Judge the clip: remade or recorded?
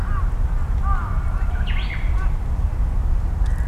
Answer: recorded